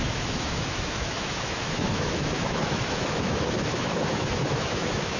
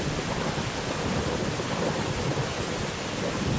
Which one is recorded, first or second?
second